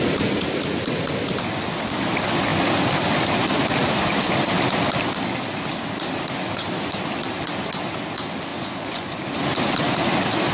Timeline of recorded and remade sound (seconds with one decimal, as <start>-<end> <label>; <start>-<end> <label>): 0.0-8.5 recorded; 8.5-9.1 remade; 9.1-10.5 recorded